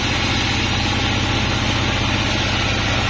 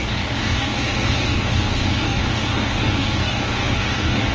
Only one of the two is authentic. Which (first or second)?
first